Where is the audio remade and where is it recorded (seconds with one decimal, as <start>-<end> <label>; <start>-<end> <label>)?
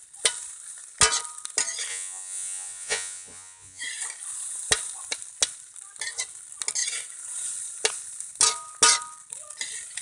0.0-1.9 recorded; 1.9-3.8 remade; 3.8-10.0 recorded